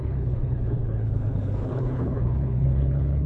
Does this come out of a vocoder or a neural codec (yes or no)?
yes